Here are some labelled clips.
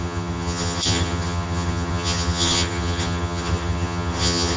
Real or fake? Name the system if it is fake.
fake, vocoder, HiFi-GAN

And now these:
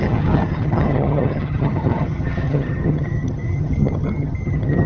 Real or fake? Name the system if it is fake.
fake, vocoder, HiFi-GAN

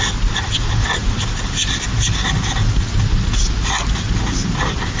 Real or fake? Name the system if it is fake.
real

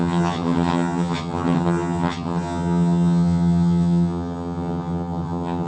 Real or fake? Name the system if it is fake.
fake, vocoder, HiFi-GAN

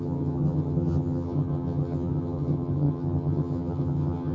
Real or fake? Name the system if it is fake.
fake, vocoder, HiFi-GAN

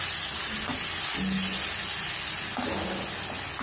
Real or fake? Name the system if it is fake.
real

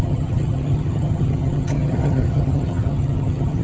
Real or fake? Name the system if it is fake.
fake, vocoder, HiFi-GAN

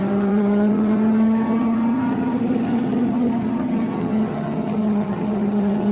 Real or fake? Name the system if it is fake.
fake, vocoder, HiFi-GAN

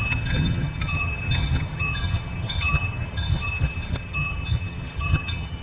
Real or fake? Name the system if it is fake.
fake, vocoder, HiFi-GAN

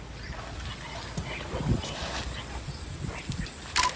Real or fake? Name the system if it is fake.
real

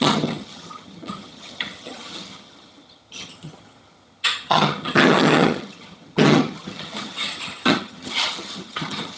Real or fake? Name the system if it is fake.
fake, vocoder, HiFi-GAN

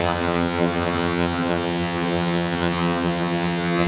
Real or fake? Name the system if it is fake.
fake, vocoder, HiFi-GAN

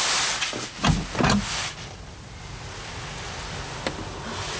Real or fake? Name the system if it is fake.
real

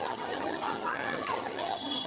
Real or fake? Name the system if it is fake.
fake, vocoder, HiFi-GAN